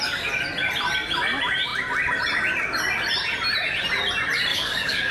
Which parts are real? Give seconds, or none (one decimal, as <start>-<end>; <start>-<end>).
0.0-4.5